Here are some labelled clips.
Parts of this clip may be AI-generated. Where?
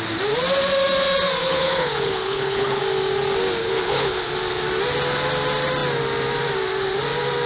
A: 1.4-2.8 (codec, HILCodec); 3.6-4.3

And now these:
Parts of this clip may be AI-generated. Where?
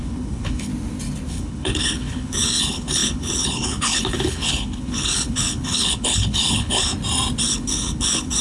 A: 0.0-0.7 (codec, HILCodec); 1.3-6.9; 7.4-8.4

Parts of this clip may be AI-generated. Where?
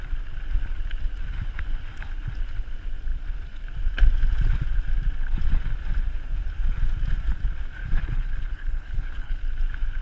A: 7.8-9.4 (codec, HILCodec)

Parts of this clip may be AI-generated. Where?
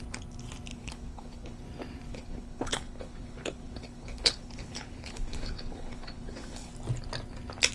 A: 0.7-1.6 (codec, HILCodec); 2.1-6.7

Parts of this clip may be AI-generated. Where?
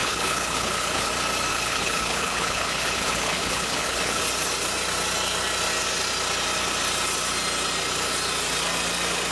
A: 0.0-1.1 (codec, HILCodec); 1.5-4.2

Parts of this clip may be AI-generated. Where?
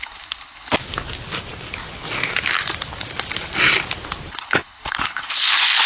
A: 0.0-0.8 (codec, HILCodec); 4.3-5.9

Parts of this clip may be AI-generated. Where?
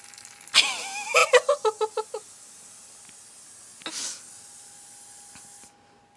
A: none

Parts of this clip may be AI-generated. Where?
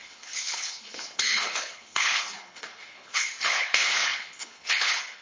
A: 0.0-5.2 (codec, HILCodec)